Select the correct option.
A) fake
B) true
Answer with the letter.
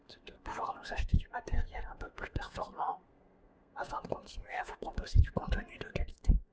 A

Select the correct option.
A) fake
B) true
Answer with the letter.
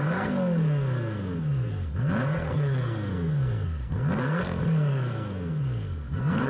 A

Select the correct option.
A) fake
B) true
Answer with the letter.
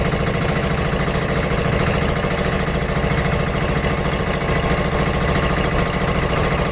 B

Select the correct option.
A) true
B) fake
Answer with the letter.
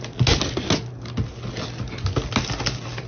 A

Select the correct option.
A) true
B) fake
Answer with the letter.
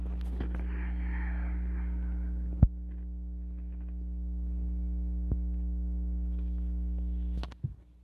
A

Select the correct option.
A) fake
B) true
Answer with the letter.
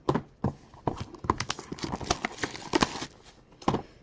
B